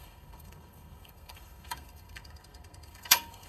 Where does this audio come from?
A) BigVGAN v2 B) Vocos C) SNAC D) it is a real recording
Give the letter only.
C